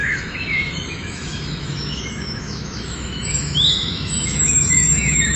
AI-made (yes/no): yes